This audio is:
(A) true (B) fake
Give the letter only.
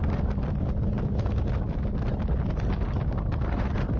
A